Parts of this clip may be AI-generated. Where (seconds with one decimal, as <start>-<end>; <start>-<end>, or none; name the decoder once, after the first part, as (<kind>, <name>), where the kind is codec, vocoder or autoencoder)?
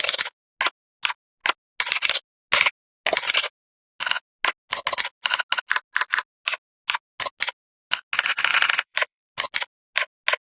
8.5-9.3 (vocoder, BigVGAN v2)